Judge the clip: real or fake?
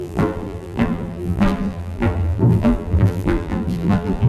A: fake